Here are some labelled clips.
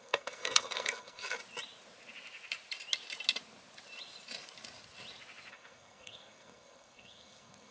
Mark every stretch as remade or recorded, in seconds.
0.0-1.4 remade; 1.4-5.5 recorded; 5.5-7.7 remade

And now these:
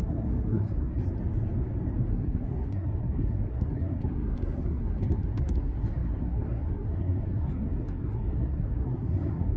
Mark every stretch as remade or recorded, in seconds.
0.0-1.0 remade; 1.0-2.1 recorded; 2.1-9.6 remade